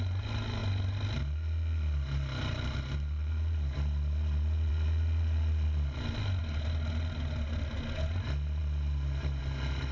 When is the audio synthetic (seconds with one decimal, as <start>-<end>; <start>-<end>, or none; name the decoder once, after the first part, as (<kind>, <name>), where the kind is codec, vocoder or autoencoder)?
none

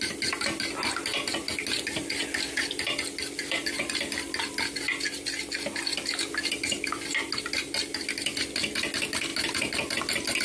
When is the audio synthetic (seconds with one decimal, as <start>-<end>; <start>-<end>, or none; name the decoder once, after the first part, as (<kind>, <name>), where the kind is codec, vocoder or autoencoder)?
none